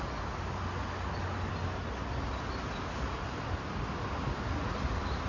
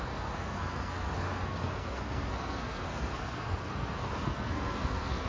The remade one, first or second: second